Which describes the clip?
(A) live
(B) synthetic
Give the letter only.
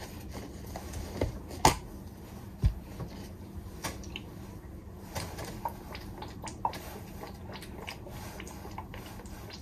A